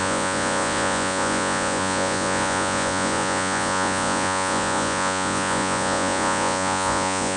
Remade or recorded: remade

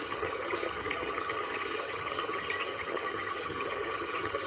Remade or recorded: remade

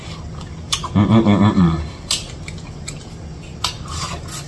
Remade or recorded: recorded